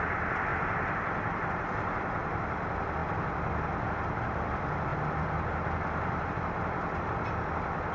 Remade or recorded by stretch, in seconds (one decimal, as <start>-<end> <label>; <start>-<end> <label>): 0.0-7.9 remade

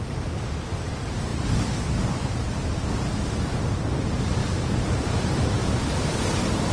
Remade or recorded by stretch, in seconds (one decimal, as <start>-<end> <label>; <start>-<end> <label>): 0.0-1.3 recorded; 1.3-3.1 remade; 3.1-4.4 recorded; 4.4-5.1 remade; 5.1-6.7 recorded

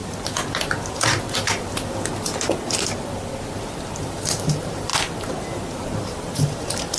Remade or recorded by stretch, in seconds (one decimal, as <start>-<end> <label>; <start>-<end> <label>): 0.0-4.0 recorded; 4.0-4.9 remade; 4.9-5.4 recorded; 5.4-7.0 remade

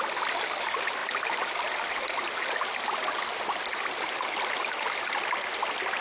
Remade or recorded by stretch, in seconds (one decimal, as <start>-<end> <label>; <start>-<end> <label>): 0.0-6.0 recorded

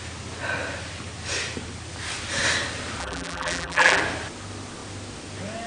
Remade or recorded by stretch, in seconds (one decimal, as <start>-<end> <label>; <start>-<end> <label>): 0.0-3.0 recorded; 3.0-4.0 remade; 4.0-5.7 recorded

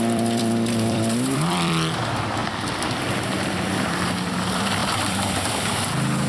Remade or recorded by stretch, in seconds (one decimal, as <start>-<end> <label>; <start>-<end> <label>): 0.0-2.4 remade; 2.4-3.0 recorded; 3.0-6.3 remade

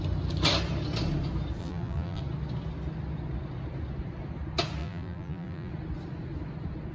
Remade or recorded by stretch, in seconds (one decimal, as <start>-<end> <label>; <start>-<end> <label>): 0.0-1.6 recorded; 1.6-2.2 remade; 2.2-4.8 recorded; 4.8-5.7 remade; 5.7-6.9 recorded

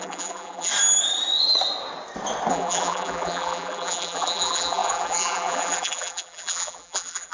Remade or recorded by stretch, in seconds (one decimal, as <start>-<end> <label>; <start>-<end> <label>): 0.0-0.7 remade; 0.7-2.5 recorded; 2.5-7.3 remade